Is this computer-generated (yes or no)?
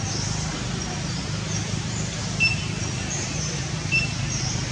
yes